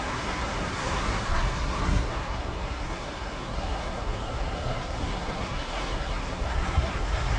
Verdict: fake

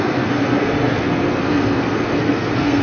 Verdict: fake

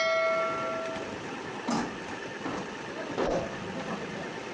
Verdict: real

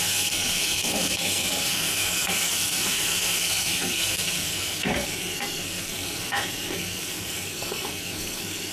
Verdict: fake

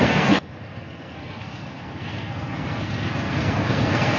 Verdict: fake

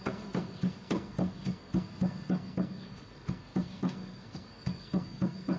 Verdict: fake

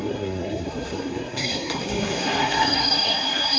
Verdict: fake